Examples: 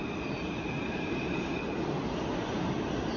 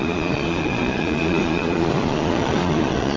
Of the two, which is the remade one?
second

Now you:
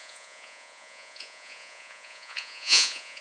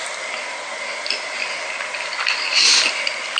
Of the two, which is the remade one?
first